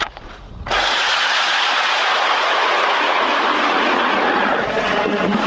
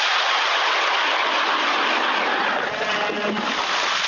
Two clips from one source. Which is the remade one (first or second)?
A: first